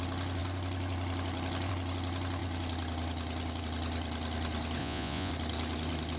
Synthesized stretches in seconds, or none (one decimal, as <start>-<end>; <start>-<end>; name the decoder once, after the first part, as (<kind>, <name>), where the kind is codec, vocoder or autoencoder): 4.8-5.3 (vocoder, Vocos)